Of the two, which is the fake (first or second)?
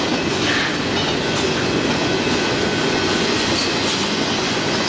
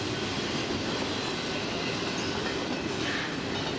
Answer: first